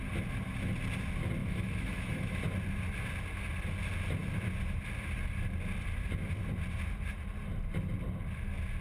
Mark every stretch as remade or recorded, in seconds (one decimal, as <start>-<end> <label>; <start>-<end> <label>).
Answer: 0.0-1.4 recorded; 1.4-2.4 remade; 2.4-8.8 recorded